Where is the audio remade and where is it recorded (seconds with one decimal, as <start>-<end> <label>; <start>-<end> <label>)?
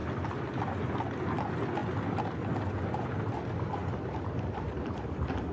0.0-3.8 recorded; 3.8-5.1 remade; 5.1-5.5 recorded